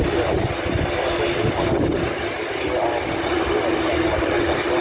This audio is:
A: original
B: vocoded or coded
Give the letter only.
A